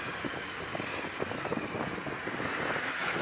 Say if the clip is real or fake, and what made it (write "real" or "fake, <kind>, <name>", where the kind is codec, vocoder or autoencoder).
real